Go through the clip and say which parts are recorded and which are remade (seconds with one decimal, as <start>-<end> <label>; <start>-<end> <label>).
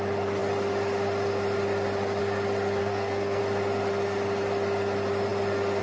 0.0-2.8 recorded; 2.8-3.4 remade; 3.4-5.8 recorded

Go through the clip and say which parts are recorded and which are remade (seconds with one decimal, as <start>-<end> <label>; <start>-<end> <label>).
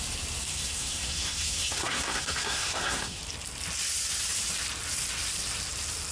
0.0-0.5 recorded; 0.5-3.2 remade; 3.2-6.1 recorded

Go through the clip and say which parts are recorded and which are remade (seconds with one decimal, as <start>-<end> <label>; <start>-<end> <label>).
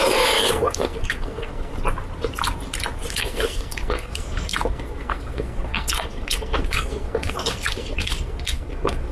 0.0-1.7 remade; 1.7-3.1 recorded; 3.1-9.1 remade